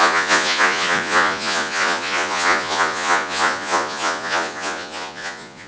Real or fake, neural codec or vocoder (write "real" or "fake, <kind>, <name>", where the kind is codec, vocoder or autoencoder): fake, vocoder, Vocos